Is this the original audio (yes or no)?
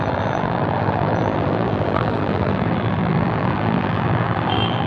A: no